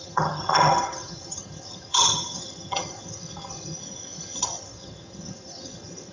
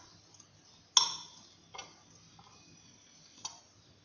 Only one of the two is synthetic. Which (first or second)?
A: first